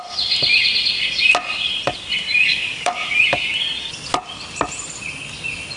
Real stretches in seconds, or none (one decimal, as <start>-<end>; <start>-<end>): 0.0-2.5; 3.2-5.8